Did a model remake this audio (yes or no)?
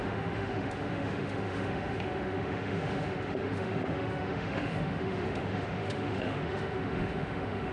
yes